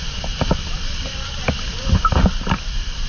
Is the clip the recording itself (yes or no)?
yes